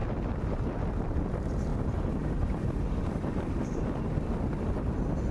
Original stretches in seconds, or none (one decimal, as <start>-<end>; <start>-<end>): 0.0-5.3